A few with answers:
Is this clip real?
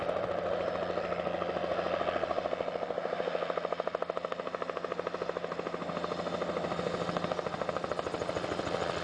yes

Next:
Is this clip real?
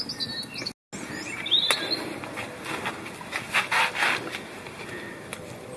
yes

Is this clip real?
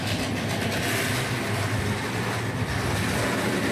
yes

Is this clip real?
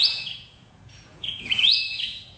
no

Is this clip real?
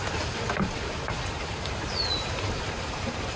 yes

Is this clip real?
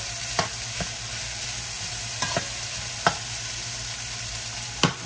yes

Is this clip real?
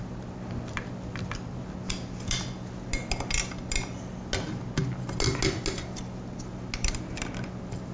yes